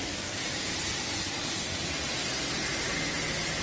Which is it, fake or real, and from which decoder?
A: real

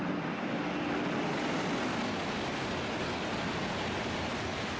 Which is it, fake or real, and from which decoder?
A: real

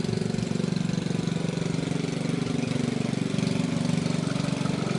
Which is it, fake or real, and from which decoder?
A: real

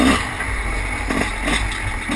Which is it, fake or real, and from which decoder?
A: real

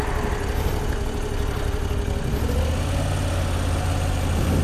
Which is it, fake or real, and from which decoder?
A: real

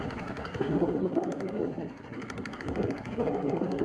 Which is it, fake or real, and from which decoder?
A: fake, codec, SNAC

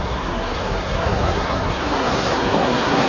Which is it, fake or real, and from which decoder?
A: fake, codec, SNAC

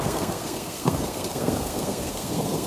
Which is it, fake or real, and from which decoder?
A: fake, codec, SNAC